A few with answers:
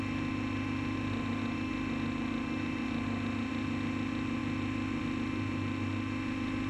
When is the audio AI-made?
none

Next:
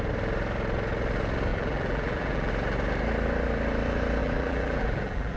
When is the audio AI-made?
1.5-2.5 (vocoder, BigVGAN v2); 4.2-5.4

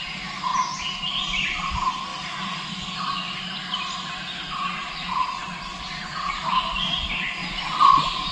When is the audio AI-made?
0.5-1.1 (vocoder, BigVGAN v2)

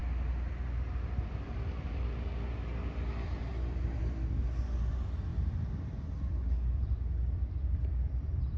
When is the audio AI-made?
4.8-5.3 (vocoder, BigVGAN v2); 6.2-8.6